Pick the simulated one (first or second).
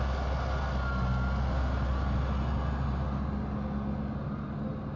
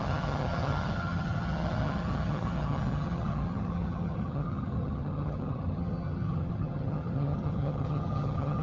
second